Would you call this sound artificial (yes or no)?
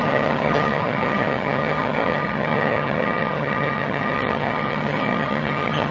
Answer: yes